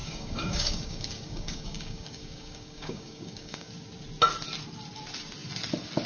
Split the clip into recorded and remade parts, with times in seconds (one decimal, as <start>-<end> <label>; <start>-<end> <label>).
0.0-3.7 remade; 3.7-6.1 recorded